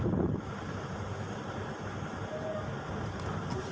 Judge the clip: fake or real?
real